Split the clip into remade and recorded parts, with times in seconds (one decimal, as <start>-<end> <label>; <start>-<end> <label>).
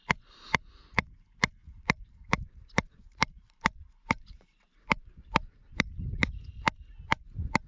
0.0-1.6 recorded; 1.6-6.2 remade; 6.2-7.7 recorded